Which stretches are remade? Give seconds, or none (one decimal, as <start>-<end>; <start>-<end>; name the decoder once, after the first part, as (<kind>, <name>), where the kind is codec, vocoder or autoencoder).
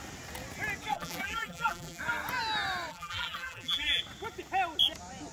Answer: 0.9-2.0 (vocoder, BigVGAN v2); 2.9-4.0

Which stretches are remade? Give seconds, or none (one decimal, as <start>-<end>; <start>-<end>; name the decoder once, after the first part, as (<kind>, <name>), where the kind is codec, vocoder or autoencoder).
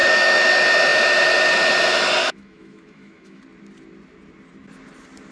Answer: 0.0-0.5 (autoencoder, DAC-VAE); 2.2-3.4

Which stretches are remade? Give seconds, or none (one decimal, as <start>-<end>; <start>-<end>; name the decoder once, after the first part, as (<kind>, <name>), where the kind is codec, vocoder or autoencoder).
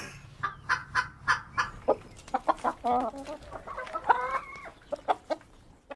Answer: none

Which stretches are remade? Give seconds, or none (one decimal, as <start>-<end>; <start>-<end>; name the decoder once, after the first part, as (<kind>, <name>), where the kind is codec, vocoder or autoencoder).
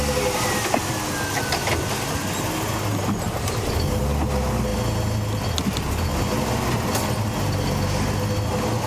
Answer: none